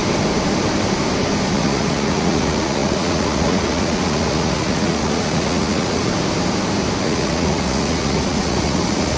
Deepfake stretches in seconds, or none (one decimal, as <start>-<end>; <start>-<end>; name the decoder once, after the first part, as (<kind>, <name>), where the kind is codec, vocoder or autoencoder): 1.5-6.1 (vocoder, Vocos); 7.0-9.2